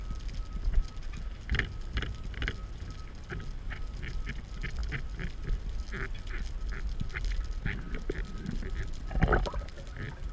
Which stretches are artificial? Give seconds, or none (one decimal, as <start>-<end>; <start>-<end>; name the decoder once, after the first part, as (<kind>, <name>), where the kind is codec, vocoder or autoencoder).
none